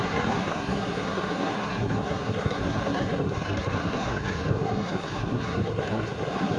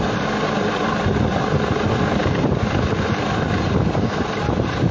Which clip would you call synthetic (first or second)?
first